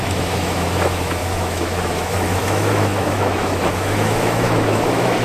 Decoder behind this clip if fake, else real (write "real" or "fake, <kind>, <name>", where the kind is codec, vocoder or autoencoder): fake, autoencoder, DAC-VAE